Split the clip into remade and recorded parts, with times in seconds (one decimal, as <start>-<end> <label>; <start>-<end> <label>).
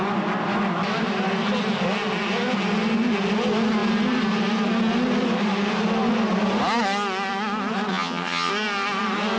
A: 0.0-7.9 recorded; 7.9-8.5 remade; 8.5-9.4 recorded